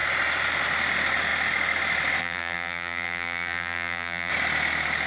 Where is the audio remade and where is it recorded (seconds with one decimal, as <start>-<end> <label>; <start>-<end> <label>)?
0.0-2.2 recorded; 2.2-4.3 remade; 4.3-5.1 recorded